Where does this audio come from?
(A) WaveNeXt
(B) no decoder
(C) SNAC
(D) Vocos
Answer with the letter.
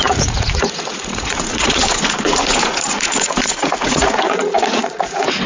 D